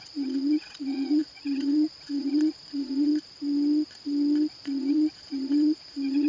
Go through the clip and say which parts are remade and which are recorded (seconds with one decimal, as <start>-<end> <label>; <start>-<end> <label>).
0.0-3.1 remade; 3.1-4.5 recorded; 4.5-6.3 remade